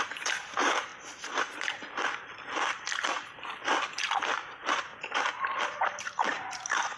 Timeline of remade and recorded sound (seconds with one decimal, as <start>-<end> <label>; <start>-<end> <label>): 0.0-0.9 remade; 0.9-4.2 recorded; 4.2-4.9 remade; 4.9-7.0 recorded